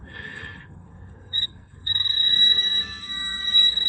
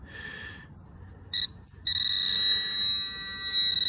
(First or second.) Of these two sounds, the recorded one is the second